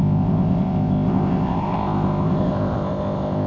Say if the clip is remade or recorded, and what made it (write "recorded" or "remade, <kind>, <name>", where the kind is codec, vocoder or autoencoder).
remade, codec, ZipCodec